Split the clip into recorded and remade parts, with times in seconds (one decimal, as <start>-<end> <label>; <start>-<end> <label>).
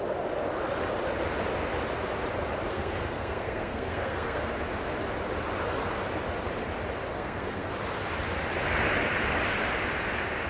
0.0-2.7 recorded; 2.7-4.4 remade; 4.4-7.1 recorded; 7.1-7.7 remade; 7.7-10.5 recorded